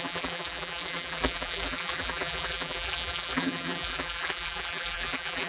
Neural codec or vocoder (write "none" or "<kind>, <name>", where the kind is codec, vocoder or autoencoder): vocoder, BigVGAN v2